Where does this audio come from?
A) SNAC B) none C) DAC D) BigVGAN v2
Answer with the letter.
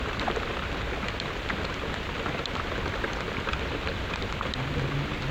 B